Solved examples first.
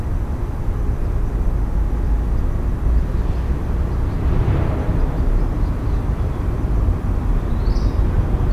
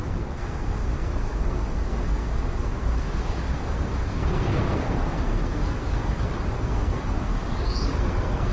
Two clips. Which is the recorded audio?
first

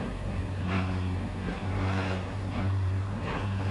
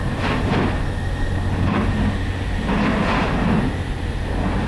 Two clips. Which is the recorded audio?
second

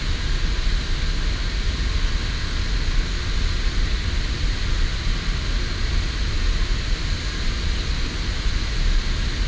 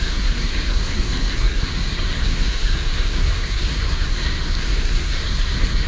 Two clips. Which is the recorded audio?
first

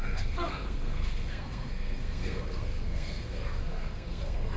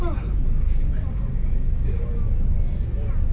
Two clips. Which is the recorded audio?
second